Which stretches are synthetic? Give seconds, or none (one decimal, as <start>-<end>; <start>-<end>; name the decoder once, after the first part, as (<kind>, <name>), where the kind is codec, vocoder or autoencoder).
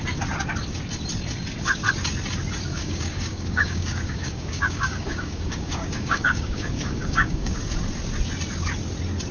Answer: 2.7-7.6 (codec, DAC)